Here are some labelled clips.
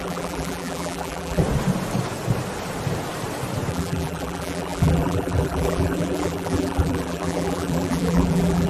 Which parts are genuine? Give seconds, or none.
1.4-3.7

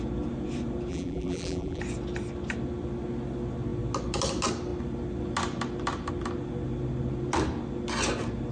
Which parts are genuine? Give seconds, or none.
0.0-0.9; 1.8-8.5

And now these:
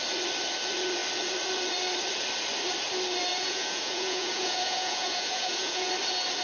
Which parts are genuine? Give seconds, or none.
0.0-3.3; 5.9-6.4

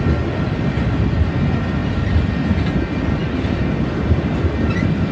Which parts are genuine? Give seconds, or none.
0.0-5.1

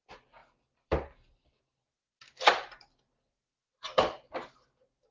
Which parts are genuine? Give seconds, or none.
0.0-5.1